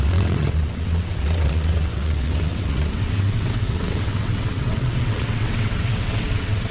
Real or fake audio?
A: fake